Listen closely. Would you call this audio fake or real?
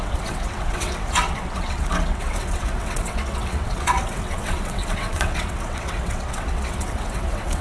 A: fake